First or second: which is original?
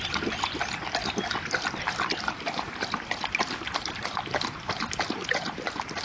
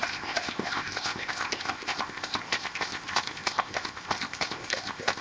first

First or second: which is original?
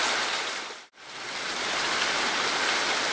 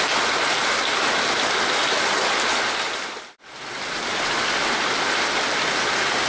second